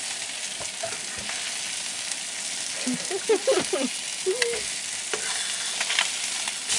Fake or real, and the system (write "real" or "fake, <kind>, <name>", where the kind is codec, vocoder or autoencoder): real